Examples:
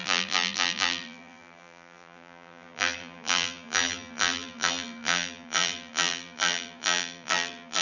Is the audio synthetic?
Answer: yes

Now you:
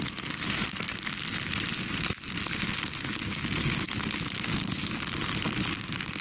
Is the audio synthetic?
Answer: no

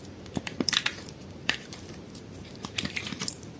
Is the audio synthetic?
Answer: yes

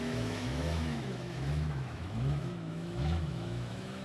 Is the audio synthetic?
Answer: yes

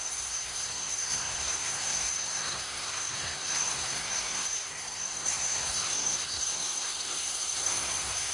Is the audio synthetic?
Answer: yes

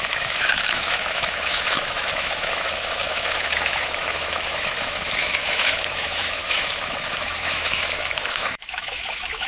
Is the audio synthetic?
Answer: yes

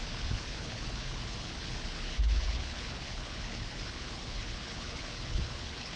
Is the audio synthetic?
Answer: yes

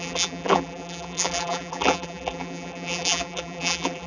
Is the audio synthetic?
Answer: yes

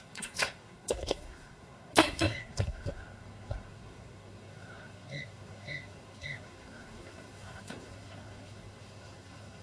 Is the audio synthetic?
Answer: yes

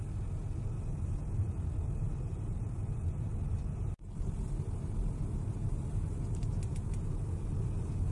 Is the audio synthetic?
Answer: no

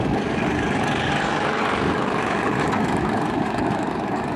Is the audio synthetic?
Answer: yes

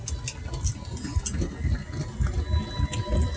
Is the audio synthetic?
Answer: no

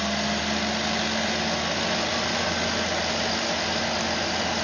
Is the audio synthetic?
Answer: no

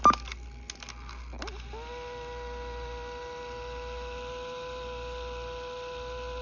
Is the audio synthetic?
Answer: no